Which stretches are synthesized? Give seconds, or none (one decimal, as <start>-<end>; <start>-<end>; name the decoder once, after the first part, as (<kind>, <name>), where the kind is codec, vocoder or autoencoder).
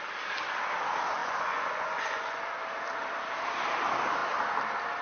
1.2-2.4 (vocoder, Vocos)